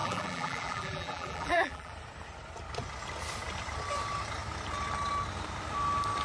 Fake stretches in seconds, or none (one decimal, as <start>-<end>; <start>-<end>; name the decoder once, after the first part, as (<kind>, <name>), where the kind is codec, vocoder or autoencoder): 0.0-1.9 (vocoder, BigVGAN v2)